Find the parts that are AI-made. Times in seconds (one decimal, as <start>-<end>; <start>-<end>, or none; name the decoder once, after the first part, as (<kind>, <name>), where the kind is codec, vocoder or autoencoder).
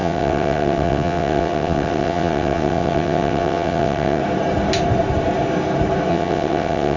0.0-4.2 (vocoder, WaveNeXt); 6.1-7.0